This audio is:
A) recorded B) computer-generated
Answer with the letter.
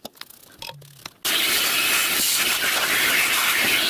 A